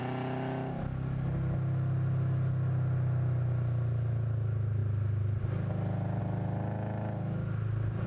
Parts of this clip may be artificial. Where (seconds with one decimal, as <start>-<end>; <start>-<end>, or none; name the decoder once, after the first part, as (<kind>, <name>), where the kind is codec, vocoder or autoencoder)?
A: none